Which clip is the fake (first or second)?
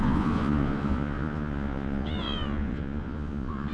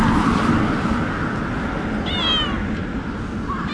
first